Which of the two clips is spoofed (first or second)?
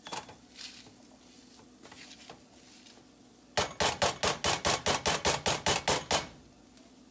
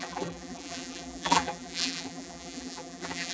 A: second